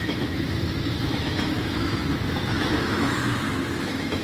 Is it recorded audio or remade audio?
remade